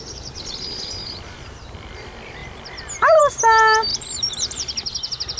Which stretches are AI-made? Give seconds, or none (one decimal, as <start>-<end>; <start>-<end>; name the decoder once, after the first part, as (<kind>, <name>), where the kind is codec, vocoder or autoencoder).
3.9-5.4 (vocoder, BigVGAN v2)